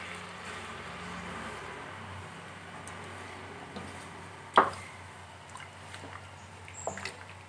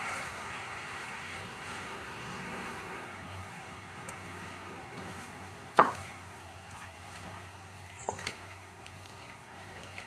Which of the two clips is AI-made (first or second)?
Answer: second